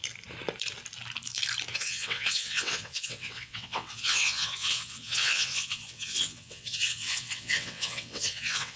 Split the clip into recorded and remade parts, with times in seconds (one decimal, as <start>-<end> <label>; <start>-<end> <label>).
0.0-1.7 recorded; 1.7-8.8 remade